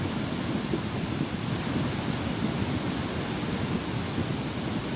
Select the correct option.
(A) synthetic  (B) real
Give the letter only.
B